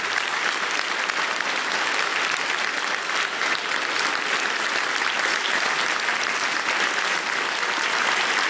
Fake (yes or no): no